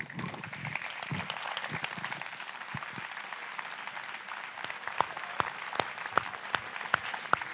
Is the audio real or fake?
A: real